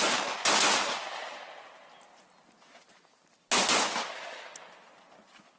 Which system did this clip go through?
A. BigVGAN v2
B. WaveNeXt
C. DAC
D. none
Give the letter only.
D